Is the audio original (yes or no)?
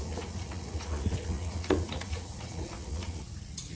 no